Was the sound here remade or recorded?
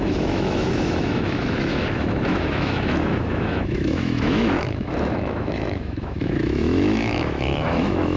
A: remade